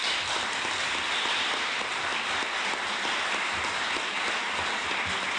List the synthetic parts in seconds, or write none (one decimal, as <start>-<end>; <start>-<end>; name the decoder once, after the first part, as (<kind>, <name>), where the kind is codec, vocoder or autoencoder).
none